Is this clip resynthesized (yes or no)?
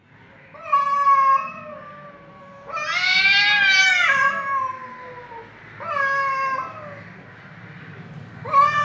no